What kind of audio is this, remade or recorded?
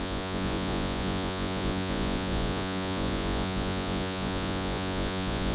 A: remade